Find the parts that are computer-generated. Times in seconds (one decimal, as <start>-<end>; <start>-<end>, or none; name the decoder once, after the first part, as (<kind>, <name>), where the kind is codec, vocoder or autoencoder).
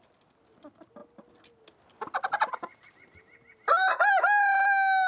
none